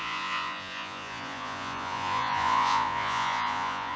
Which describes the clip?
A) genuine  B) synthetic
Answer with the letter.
B